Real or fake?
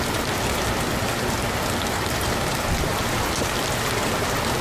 real